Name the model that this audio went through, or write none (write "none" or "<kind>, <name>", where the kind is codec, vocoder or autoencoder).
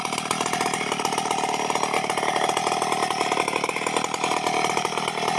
none